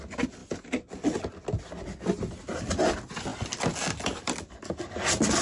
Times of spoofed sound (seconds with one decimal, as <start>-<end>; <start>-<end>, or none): none